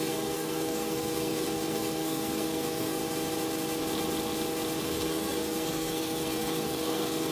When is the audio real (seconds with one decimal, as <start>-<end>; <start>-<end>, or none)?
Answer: 3.0-4.8